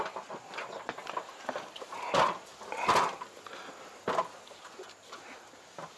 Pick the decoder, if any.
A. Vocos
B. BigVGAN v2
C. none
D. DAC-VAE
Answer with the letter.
C